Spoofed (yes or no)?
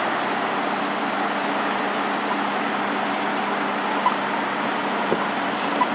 no